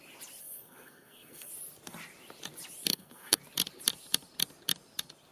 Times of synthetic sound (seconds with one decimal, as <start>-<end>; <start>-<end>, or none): 0.4-1.5; 2.9-3.4